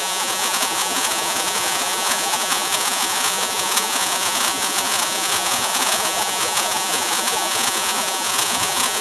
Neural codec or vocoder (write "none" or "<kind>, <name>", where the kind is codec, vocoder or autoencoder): vocoder, Vocos